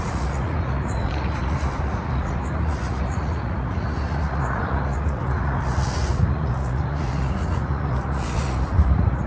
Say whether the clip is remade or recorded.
remade